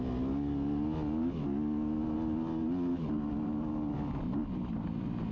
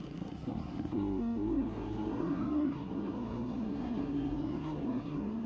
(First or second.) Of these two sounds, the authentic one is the first